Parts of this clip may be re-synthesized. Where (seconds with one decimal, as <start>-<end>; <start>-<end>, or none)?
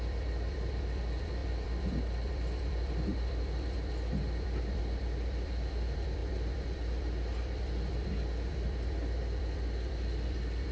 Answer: 0.0-10.7